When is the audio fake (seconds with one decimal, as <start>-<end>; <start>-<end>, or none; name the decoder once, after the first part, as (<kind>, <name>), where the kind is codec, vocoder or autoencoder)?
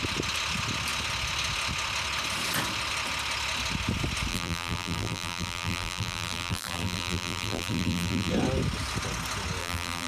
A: 4.3-8.3 (vocoder, BigVGAN v2); 9.6-10.1